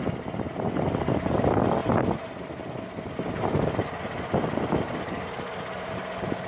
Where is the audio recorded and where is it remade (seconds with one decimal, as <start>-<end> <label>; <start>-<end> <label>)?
0.0-6.5 recorded